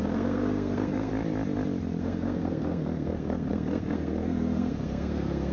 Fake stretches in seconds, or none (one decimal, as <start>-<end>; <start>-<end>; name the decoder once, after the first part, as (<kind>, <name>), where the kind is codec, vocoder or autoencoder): 0.0-1.1 (codec, SNAC); 2.0-5.5